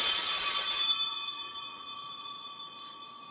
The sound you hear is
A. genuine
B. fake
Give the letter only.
B